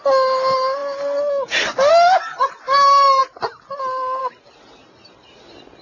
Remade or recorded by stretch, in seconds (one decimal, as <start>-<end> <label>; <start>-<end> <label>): 0.0-5.8 recorded